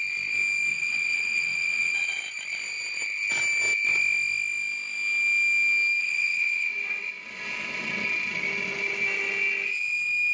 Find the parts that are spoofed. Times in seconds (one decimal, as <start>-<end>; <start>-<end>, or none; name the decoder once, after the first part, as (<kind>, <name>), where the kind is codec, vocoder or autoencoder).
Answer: 0.7-2.2 (vocoder, WaveNeXt); 6.0-7.1